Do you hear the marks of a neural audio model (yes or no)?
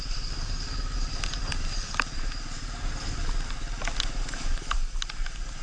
no